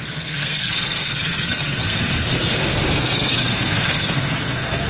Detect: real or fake fake